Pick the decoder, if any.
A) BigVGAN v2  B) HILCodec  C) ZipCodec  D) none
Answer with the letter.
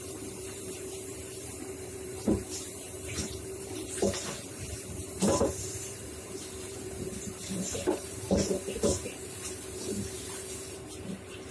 A